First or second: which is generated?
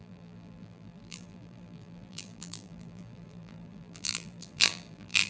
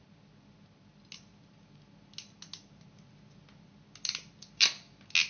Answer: first